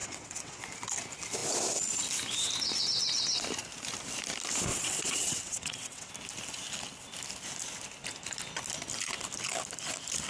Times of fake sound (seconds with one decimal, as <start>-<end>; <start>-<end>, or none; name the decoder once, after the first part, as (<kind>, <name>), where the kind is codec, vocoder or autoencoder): 0.0-0.6 (vocoder, WaveNeXt); 4.7-6.1